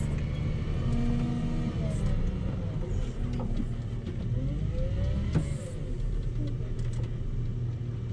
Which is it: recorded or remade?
recorded